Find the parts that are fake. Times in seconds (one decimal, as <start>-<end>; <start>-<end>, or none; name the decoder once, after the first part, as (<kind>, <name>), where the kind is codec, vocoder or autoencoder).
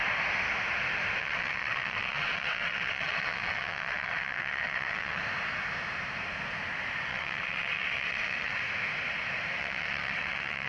1.2-5.2 (vocoder, WaveNeXt); 7.1-8.6; 9.6-10.7